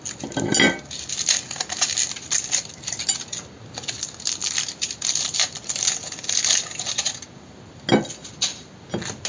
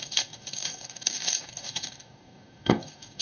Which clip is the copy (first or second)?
second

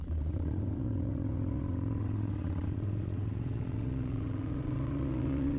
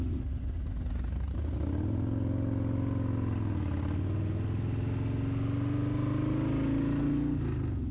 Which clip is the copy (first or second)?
first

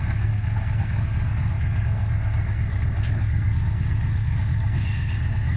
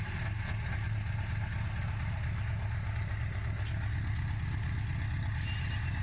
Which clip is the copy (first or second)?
first